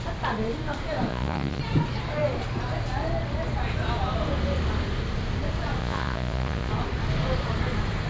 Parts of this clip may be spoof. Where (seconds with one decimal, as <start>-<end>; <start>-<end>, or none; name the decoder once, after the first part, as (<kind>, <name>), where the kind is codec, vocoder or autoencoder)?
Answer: 1.1-1.6 (vocoder, Vocos); 5.8-6.7